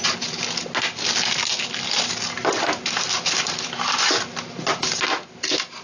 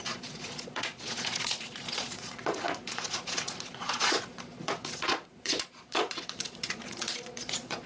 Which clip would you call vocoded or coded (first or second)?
second